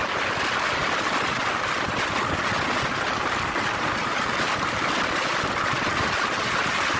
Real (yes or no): yes